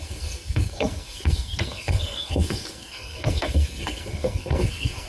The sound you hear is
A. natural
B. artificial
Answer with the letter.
B